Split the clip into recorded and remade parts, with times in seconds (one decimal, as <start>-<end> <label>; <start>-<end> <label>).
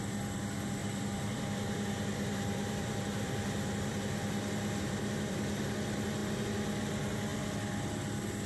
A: 0.0-0.8 recorded; 0.8-1.4 remade; 1.4-2.6 recorded; 2.6-5.6 remade; 5.6-8.5 recorded